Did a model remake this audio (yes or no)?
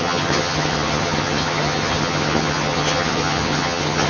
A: yes